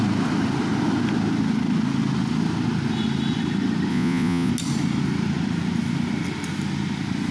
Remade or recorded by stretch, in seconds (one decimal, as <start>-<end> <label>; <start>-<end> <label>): 0.0-3.9 recorded; 3.9-4.5 remade; 4.5-7.3 recorded